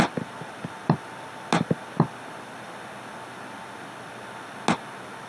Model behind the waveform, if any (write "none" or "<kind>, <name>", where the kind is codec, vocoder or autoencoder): none